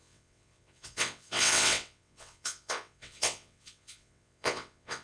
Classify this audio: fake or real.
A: fake